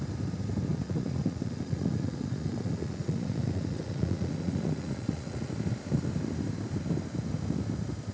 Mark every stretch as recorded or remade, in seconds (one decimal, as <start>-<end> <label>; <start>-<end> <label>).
0.0-0.7 recorded; 0.7-5.5 remade; 5.5-8.1 recorded